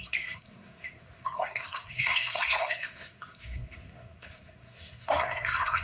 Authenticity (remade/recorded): remade